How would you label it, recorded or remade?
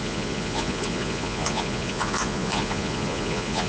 remade